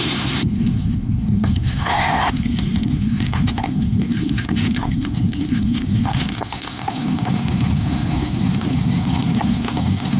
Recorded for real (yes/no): no